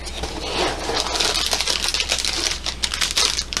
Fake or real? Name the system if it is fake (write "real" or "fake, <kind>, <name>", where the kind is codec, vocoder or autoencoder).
real